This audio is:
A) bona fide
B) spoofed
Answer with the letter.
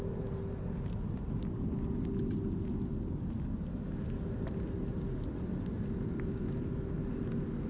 A